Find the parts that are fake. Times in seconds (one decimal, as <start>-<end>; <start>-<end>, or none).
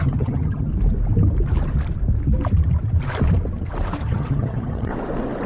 0.0-0.7; 4.0-4.9